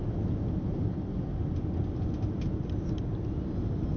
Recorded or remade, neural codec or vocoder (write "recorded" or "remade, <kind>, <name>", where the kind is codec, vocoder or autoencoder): recorded